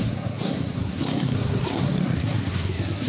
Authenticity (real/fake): fake